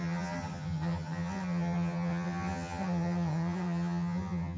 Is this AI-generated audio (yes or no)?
yes